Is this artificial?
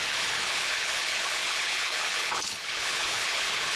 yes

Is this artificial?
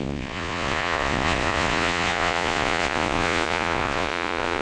yes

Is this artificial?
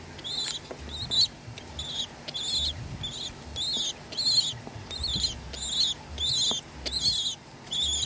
no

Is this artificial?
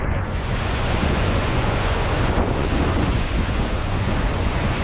yes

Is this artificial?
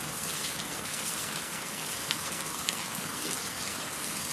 yes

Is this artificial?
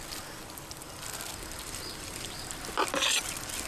no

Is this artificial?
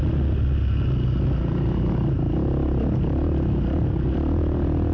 no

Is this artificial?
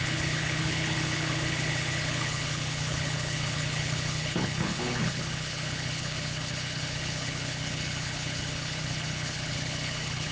yes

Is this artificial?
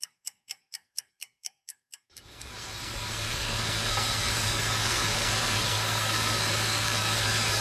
yes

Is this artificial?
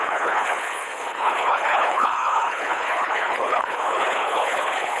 yes